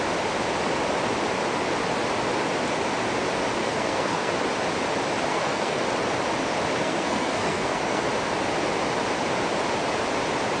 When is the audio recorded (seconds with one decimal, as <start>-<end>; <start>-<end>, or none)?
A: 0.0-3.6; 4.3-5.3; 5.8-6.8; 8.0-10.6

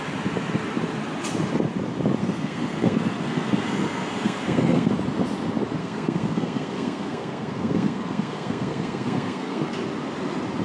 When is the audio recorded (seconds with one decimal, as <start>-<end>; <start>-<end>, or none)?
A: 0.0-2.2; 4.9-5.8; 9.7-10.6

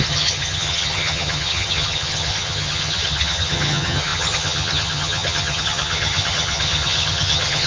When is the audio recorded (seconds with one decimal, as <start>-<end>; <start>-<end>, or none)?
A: none